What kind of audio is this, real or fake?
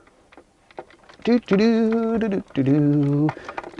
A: real